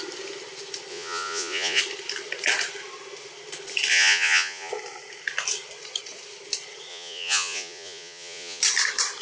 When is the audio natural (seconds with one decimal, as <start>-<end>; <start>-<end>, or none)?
0.0-0.9; 1.8-3.9; 4.7-6.9; 8.6-9.2